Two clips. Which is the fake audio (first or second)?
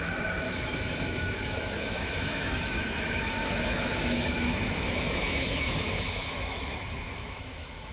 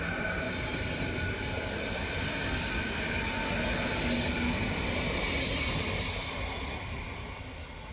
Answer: first